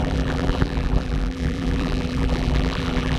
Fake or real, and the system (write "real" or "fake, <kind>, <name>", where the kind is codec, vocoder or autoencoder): fake, vocoder, BigVGAN v2